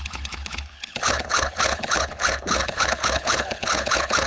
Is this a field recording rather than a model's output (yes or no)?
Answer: no